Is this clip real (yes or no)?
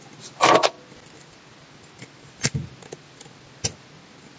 yes